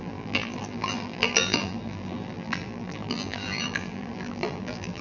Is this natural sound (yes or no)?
no